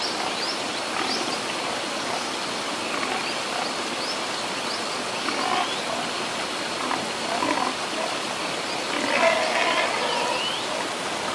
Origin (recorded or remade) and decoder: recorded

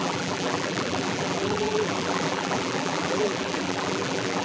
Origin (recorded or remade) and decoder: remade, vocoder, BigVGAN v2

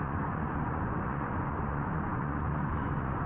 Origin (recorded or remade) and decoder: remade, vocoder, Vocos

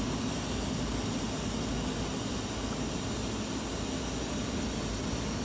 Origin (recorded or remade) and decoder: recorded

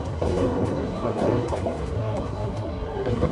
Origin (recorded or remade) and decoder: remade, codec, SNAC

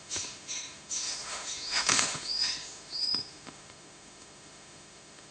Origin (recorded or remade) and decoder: remade, autoencoder, DAC-VAE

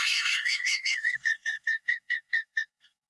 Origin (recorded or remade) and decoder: remade, codec, SNAC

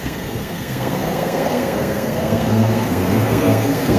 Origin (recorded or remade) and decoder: remade, codec, SNAC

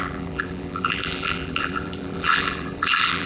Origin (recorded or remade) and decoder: remade, vocoder, BigVGAN v2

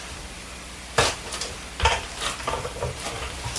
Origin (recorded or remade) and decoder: remade, vocoder, BigVGAN v2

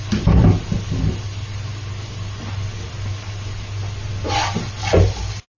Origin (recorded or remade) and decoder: recorded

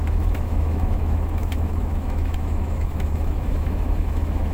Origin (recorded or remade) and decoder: remade, autoencoder, DAC-VAE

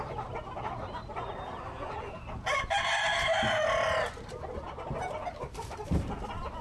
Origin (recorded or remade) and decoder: recorded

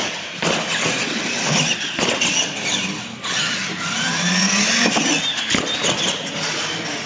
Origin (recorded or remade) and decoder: recorded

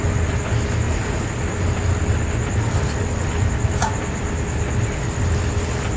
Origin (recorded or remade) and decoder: recorded